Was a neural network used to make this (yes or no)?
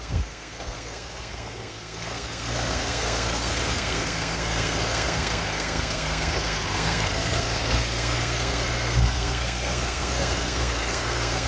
yes